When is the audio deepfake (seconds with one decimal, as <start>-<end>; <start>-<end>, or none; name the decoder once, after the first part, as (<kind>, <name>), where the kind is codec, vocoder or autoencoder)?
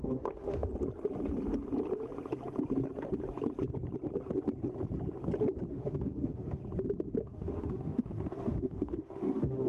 0.0-0.7 (autoencoder, DAC-VAE); 5.7-6.6; 7.2-9.7